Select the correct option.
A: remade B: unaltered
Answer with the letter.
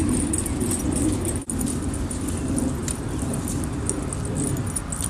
B